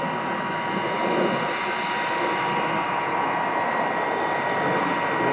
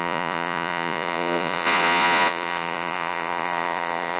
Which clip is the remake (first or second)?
second